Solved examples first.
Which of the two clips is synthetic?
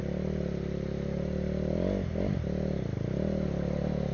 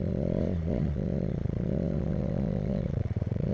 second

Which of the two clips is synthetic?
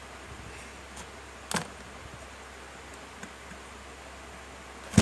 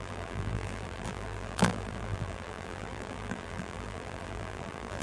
second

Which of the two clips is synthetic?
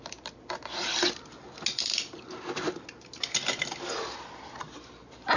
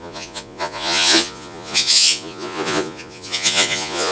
second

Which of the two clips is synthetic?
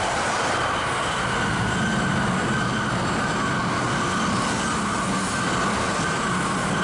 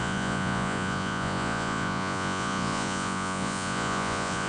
second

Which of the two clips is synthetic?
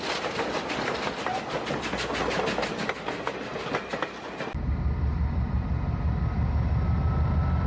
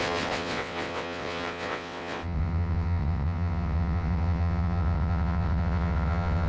second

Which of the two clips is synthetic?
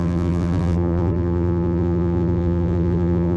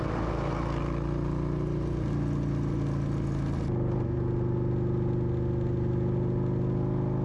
first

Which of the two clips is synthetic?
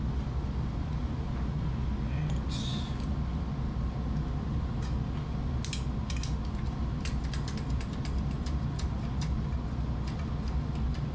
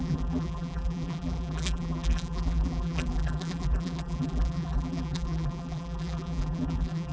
second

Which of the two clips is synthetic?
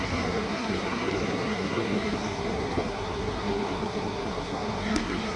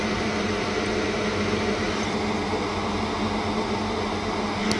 first